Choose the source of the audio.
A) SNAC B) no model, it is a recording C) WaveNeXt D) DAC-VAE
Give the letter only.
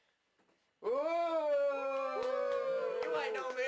B